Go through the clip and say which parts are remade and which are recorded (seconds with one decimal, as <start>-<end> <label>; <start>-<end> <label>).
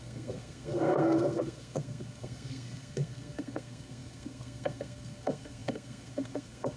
0.0-6.8 remade